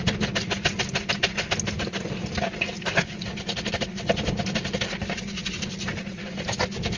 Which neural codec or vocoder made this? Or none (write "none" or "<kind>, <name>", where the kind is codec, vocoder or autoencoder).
none